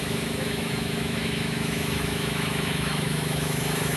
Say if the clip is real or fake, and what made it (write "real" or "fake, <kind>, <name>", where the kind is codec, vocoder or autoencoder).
fake, autoencoder, DAC-VAE